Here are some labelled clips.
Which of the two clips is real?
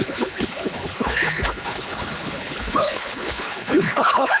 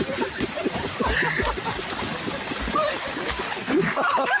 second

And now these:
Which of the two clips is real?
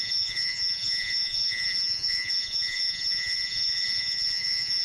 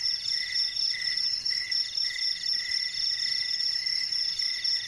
second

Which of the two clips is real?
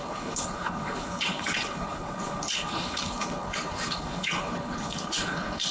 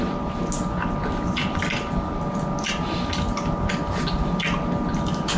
second